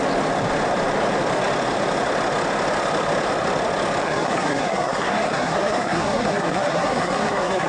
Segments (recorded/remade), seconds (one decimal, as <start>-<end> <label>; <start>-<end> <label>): 0.0-4.0 recorded; 4.0-7.7 remade